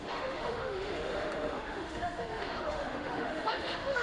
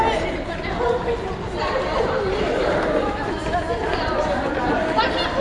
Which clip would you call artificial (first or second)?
first